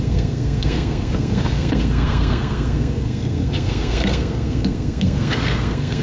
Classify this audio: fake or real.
fake